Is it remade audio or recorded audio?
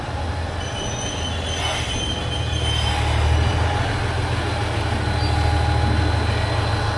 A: recorded